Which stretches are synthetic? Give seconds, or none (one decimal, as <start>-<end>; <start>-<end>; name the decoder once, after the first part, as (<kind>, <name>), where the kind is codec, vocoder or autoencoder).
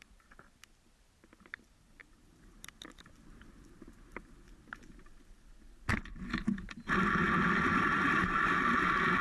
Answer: none